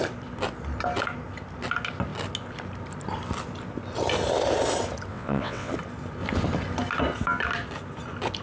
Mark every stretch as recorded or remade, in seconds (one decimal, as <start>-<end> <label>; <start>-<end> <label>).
0.0-5.1 recorded; 5.1-5.7 remade; 5.7-8.4 recorded